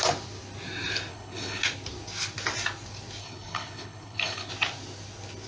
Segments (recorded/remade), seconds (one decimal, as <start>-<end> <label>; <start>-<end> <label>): 0.0-1.1 recorded; 1.1-1.6 remade; 1.6-3.2 recorded; 3.2-4.5 remade; 4.5-5.5 recorded